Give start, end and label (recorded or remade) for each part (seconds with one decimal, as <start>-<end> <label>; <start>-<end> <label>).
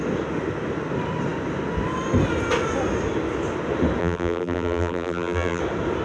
0.0-4.0 recorded; 4.0-5.6 remade; 5.6-6.0 recorded